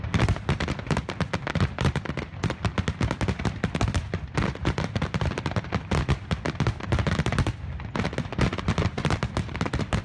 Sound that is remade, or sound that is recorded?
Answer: recorded